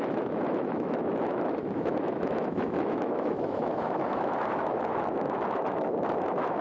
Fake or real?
fake